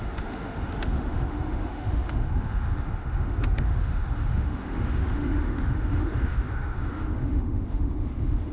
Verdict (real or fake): fake